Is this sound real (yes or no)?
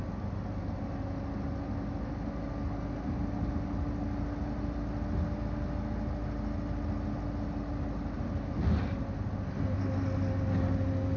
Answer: yes